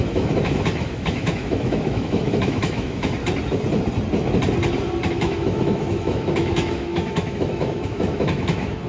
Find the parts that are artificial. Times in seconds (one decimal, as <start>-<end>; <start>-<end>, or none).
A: 0.0-3.2; 5.1-8.9